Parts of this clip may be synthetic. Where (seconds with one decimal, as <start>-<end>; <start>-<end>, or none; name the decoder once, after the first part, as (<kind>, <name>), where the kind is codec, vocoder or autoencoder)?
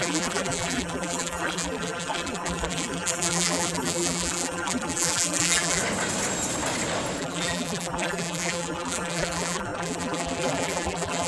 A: 0.0-5.8 (vocoder, BigVGAN v2); 7.2-11.3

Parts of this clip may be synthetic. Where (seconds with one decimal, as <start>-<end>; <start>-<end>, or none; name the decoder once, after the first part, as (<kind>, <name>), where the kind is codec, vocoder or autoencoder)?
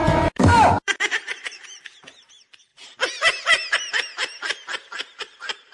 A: 0.0-2.7 (vocoder, BigVGAN v2); 5.2-5.7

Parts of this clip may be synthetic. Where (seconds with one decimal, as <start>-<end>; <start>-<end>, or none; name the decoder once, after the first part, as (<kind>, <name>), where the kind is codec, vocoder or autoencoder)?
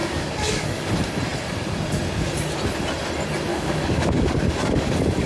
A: 0.0-0.9 (codec, DAC); 3.5-5.3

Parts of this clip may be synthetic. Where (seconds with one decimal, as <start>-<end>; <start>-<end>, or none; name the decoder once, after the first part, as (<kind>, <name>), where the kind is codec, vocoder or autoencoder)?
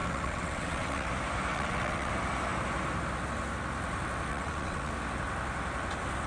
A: 0.0-1.1 (vocoder, WaveNeXt); 1.5-2.1; 4.3-4.9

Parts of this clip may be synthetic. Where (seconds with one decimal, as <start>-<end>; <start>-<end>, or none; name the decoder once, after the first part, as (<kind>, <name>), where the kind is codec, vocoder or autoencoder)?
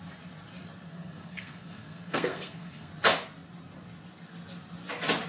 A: 0.9-2.9 (codec, SNAC)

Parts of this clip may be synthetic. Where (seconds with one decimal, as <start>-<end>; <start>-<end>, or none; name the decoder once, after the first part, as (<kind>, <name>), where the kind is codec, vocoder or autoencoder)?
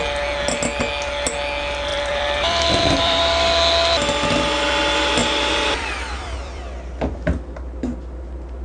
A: 1.9-3.2 (vocoder, BigVGAN v2); 5.2-6.9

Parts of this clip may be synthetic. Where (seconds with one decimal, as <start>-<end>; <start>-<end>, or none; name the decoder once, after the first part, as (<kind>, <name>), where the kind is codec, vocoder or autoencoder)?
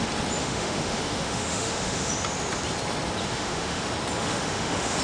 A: 0.4-2.1 (autoencoder, DAC-VAE); 3.2-3.8; 4.2-5.0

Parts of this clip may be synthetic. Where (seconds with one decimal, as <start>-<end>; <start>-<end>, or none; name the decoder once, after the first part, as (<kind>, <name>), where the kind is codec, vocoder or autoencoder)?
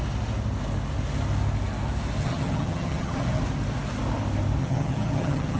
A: 2.2-3.4 (vocoder, HiFi-GAN); 4.6-5.6